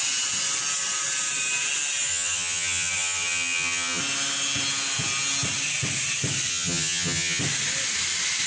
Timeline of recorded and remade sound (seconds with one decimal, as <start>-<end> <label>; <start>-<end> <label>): 0.0-2.1 recorded; 2.1-4.0 remade; 4.0-6.5 recorded; 6.5-7.4 remade; 7.4-8.5 recorded